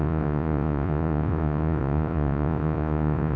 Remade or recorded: remade